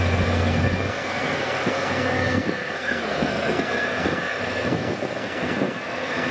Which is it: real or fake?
fake